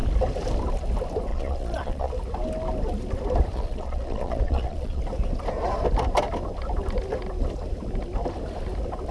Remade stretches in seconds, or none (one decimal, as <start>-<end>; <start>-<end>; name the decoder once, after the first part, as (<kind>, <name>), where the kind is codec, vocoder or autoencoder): 1.3-2.1 (vocoder, Vocos); 3.5-5.0